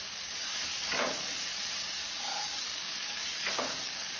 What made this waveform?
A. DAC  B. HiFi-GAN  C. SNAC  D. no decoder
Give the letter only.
A